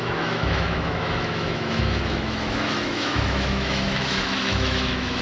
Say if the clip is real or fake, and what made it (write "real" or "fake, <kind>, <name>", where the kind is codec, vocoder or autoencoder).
fake, autoencoder, DAC-VAE